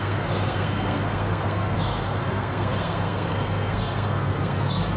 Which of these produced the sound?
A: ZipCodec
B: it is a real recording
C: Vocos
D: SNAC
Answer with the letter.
D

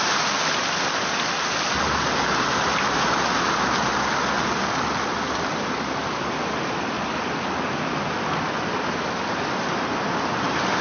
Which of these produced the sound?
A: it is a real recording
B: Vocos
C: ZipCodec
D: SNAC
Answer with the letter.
A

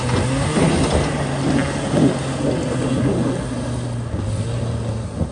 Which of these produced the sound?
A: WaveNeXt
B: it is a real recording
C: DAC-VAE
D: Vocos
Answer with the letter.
B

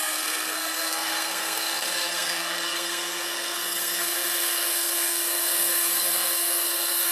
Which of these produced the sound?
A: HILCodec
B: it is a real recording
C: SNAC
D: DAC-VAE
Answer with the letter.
C